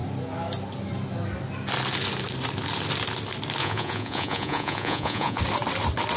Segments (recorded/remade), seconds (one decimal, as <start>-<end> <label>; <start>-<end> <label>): 0.0-3.6 recorded; 3.6-5.4 remade; 5.4-6.2 recorded